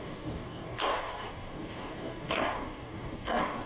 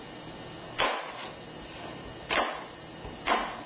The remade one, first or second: first